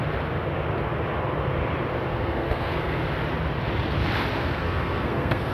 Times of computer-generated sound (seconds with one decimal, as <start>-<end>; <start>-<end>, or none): 2.1-3.1; 4.3-5.5